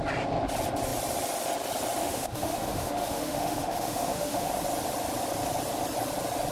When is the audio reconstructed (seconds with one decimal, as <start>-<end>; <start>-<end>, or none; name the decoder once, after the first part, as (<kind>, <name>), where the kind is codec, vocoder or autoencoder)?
2.0-4.5 (autoencoder, DAC-VAE)